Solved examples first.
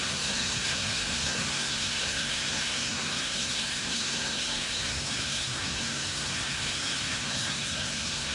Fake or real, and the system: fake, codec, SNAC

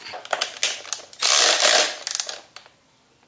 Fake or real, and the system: real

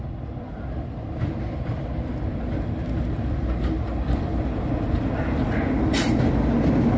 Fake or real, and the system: real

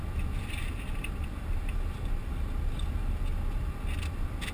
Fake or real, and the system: real